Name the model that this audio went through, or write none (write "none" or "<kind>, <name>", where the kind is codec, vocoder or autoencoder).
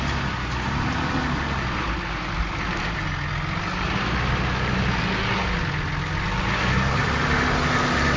none